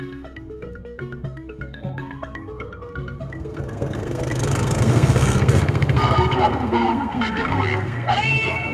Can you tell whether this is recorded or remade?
remade